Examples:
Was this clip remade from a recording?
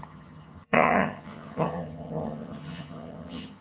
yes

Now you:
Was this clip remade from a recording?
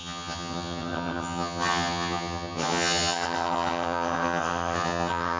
yes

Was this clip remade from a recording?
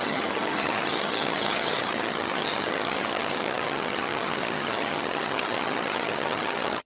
yes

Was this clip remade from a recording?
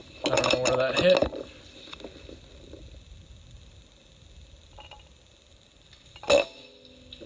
no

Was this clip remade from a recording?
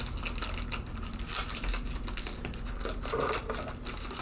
no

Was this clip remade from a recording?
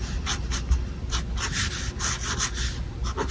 no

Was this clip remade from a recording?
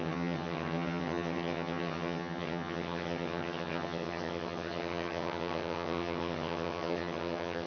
yes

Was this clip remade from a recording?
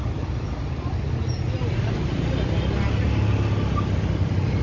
no